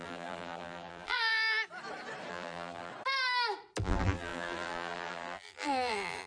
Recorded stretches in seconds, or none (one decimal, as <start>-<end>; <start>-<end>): 1.3-2.3; 2.9-3.8